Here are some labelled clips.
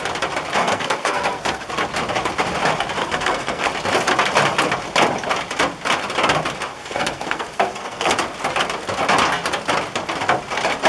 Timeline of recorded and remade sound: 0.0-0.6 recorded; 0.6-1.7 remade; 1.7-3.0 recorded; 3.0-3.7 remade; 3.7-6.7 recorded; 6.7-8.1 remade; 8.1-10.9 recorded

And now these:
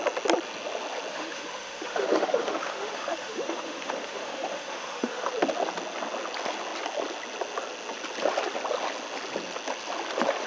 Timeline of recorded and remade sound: 0.0-1.1 recorded; 1.1-5.3 remade; 5.3-10.5 recorded

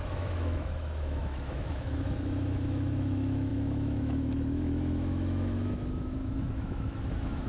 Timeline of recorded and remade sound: 0.0-7.5 remade

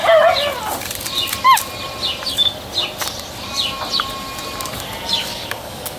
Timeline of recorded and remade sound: 0.0-5.2 recorded; 5.2-6.0 remade

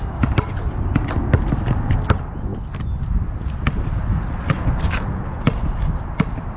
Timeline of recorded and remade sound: 0.0-6.6 recorded

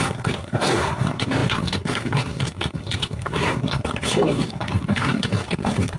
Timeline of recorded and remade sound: 0.0-6.0 remade